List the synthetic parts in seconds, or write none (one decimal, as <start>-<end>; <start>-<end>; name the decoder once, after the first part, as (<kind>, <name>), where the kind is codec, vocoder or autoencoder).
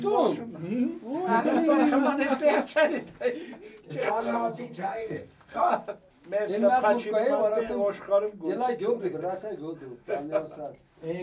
4.0-5.7 (codec, SNAC)